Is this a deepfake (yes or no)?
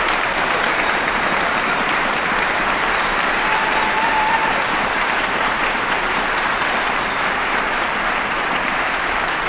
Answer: yes